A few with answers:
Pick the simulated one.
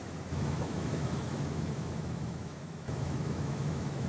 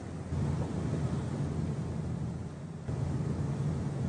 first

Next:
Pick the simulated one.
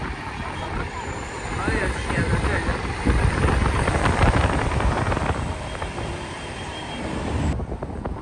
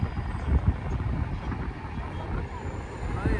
first